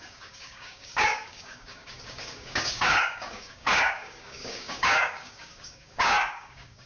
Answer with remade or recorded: remade